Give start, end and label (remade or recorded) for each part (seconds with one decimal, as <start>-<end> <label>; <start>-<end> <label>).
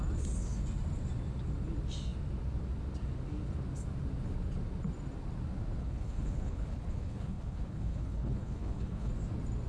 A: 0.0-5.8 recorded; 5.8-9.1 remade; 9.1-9.7 recorded